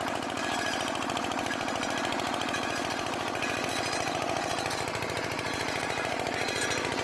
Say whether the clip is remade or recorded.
recorded